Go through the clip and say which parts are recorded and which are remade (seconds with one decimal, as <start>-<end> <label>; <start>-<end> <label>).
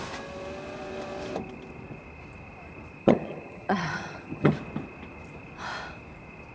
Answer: 0.0-3.0 recorded; 3.0-4.5 remade; 4.5-6.5 recorded